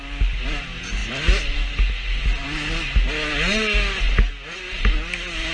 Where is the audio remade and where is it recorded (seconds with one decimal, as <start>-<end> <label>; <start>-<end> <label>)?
0.0-5.5 recorded